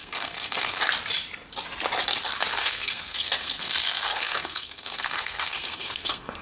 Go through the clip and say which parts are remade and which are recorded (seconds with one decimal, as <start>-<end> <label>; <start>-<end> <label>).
0.0-0.8 remade; 0.8-2.5 recorded; 2.5-6.4 remade